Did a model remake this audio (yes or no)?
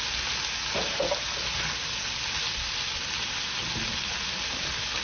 no